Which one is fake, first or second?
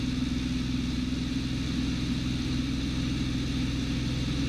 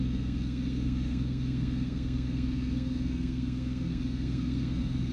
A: second